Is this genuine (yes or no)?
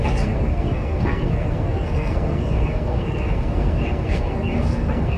no